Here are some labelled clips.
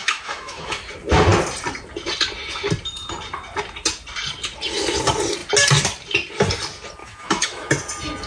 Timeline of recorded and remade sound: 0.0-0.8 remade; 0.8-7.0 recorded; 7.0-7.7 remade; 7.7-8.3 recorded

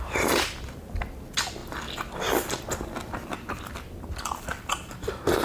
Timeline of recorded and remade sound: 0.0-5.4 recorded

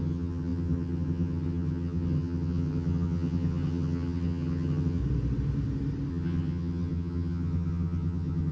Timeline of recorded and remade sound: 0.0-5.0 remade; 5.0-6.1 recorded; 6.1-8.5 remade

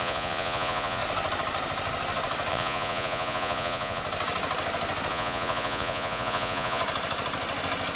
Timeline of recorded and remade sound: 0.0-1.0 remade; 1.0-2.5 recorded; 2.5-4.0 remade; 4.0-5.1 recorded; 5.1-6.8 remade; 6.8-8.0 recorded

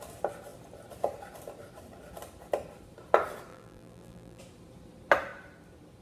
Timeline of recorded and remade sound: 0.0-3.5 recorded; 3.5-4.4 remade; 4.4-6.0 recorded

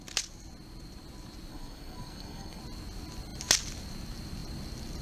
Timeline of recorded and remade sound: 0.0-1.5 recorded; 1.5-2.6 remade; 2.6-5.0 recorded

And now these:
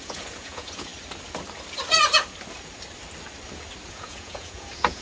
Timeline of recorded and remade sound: 0.0-0.9 remade; 0.9-3.9 recorded; 3.9-5.0 remade

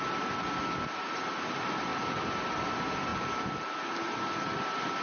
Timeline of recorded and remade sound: 0.0-5.0 recorded